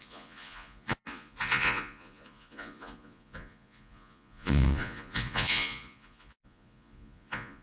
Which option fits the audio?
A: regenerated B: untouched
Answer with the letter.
A